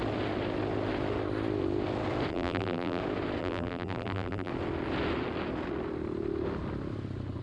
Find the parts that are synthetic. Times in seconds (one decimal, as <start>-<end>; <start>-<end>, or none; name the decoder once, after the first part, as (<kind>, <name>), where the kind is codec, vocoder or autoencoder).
2.3-3.0 (vocoder, BigVGAN v2); 3.4-4.5

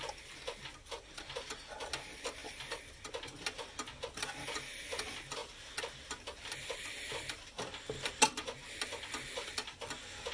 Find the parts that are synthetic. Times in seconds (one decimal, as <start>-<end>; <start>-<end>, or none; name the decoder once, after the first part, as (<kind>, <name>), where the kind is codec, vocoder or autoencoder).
none